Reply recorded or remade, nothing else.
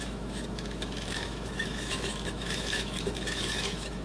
remade